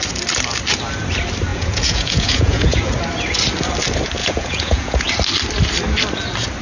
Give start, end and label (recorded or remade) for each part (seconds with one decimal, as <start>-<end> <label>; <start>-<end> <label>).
0.0-1.5 recorded; 1.5-2.9 remade; 2.9-4.2 recorded; 4.2-5.1 remade; 5.1-6.6 recorded